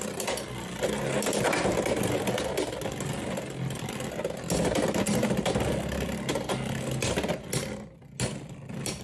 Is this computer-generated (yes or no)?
no